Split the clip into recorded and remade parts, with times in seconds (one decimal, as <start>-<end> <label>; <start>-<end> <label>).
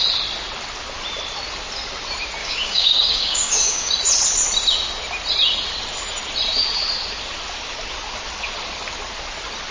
0.0-2.4 recorded; 2.4-3.9 remade; 3.9-9.7 recorded